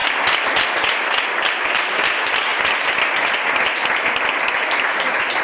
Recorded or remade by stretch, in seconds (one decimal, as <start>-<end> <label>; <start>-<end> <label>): 0.0-5.4 recorded